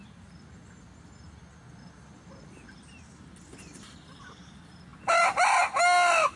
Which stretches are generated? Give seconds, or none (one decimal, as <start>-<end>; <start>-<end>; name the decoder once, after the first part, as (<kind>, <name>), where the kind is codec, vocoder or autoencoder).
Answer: none